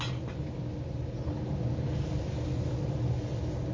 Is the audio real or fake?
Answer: real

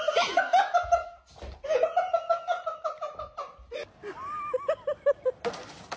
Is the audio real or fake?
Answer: real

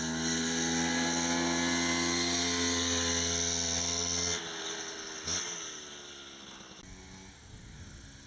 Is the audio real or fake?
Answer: real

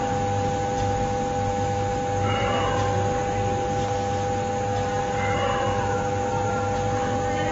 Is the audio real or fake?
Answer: real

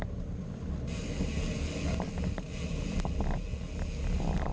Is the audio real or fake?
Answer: real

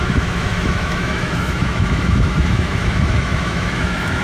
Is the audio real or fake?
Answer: fake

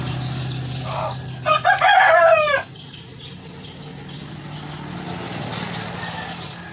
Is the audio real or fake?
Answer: real